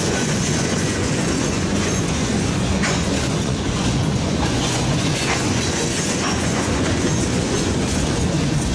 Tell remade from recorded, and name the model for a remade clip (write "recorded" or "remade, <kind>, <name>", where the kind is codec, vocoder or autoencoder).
remade, vocoder, Vocos